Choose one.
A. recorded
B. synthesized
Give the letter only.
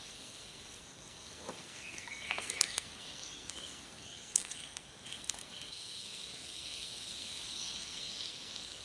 B